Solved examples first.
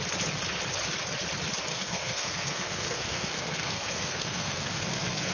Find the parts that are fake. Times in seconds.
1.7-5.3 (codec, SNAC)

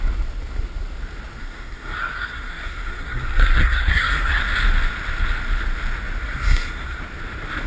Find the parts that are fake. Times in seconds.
1.4-4.4 (codec, SNAC); 6.2-7.0

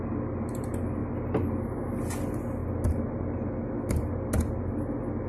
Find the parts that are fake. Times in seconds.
none

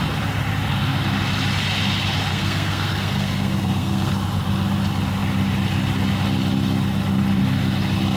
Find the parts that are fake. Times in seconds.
2.3-4.1 (codec, SNAC)

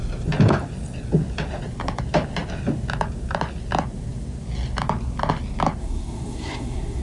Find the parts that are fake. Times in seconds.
5.8-7.0 (codec, SNAC)

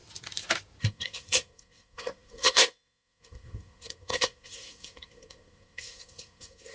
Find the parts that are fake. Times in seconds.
0.8-6.7 (codec, SNAC)